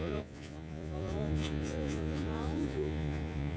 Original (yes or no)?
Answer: no